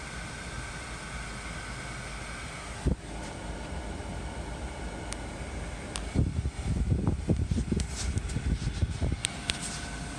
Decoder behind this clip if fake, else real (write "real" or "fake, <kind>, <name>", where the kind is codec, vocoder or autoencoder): real